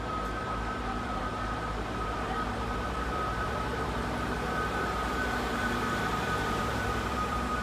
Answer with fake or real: fake